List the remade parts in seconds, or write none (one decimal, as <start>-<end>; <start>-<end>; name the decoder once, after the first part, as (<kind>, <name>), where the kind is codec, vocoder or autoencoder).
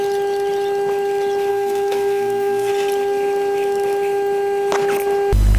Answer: 1.5-2.7 (codec, SNAC)